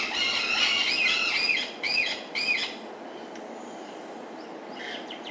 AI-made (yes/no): no